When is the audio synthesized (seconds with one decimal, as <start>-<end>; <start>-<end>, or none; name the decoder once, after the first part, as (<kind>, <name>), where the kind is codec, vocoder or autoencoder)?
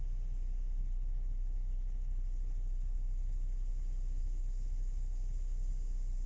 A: 0.8-3.7 (codec, HILCodec); 4.2-5.7